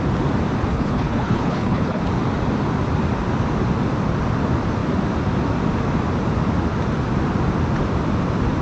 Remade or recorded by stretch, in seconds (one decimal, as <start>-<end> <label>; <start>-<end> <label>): 0.0-0.7 recorded; 0.7-2.0 remade; 2.0-8.6 recorded

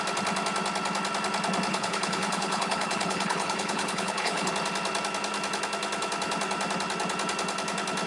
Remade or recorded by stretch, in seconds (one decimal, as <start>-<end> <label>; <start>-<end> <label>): 0.0-1.7 recorded; 1.7-4.5 remade; 4.5-8.1 recorded